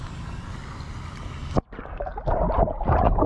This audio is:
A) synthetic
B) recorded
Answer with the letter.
B